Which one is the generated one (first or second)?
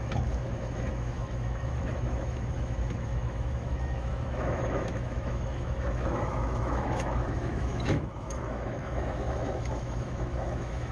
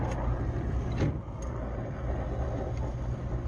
first